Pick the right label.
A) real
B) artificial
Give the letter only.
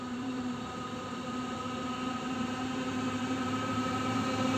B